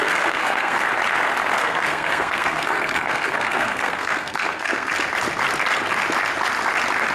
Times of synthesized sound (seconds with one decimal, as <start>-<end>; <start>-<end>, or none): 0.0-0.8; 1.6-4.9